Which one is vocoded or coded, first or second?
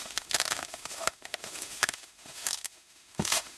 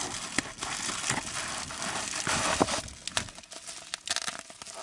first